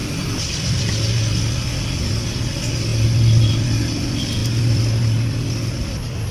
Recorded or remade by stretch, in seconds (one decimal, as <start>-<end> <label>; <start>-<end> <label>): 0.0-4.4 recorded; 4.4-5.4 remade; 5.4-6.3 recorded